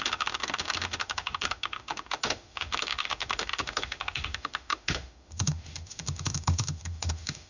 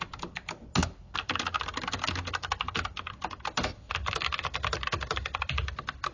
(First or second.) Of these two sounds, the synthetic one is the first